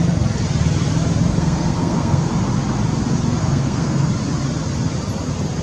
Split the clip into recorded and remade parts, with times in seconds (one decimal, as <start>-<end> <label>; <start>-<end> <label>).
0.0-1.3 recorded; 1.3-2.3 remade; 2.3-3.4 recorded; 3.4-4.1 remade; 4.1-5.6 recorded